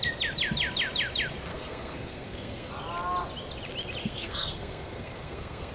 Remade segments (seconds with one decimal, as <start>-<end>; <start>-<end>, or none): 1.5-2.7; 4.0-5.7